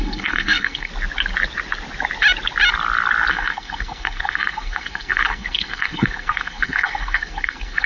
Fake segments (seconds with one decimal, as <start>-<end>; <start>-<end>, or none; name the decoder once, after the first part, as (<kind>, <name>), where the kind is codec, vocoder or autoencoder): 0.0-0.9 (codec, SNAC); 3.3-7.9